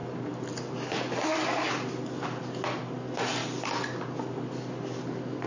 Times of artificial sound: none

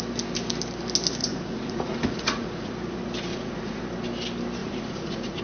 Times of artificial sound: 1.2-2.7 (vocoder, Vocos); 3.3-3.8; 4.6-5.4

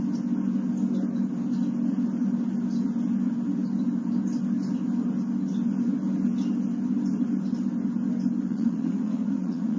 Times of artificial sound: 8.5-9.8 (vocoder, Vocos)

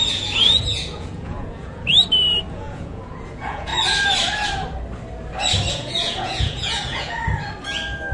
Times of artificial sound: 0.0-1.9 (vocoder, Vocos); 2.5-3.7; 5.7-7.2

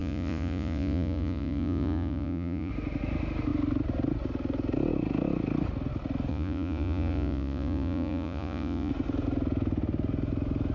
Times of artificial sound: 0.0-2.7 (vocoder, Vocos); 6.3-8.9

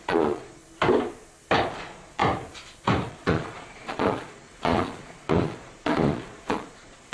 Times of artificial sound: 0.0-0.6 (vocoder, Vocos); 1.7-2.2; 3.1-7.1